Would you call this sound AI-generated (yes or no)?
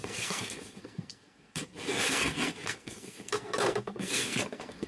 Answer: yes